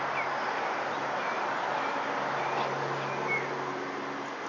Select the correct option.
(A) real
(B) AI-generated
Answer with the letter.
A